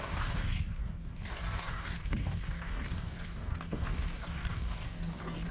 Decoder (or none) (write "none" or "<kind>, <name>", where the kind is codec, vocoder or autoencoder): codec, DAC